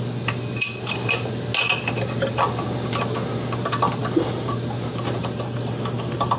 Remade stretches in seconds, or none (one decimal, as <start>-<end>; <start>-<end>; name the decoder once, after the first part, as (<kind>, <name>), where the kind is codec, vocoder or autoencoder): none

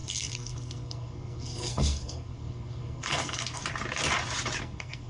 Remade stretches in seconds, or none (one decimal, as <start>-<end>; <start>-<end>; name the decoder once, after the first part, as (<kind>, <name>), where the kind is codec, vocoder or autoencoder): 0.0-3.6 (codec, SNAC); 4.6-5.1

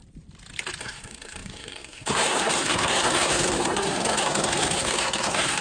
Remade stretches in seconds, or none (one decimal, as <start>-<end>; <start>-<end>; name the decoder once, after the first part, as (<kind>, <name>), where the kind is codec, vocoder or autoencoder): 0.8-5.6 (codec, SNAC)

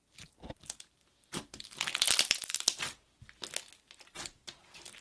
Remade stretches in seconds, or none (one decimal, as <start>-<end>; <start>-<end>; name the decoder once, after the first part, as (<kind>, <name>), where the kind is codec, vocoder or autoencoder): none

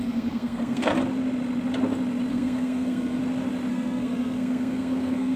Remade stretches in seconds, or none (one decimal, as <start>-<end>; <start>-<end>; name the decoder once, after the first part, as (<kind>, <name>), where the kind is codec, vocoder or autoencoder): 0.0-0.9 (codec, SNAC); 2.3-3.2; 3.7-5.4

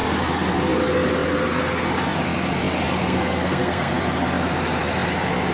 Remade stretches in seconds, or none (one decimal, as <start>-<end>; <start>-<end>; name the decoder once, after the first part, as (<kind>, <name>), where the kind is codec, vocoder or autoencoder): 3.0-3.9 (codec, SNAC)

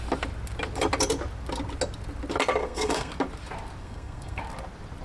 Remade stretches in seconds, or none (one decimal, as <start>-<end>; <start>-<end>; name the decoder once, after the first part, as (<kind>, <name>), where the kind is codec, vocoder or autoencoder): 2.6-3.1 (codec, SNAC); 3.8-4.4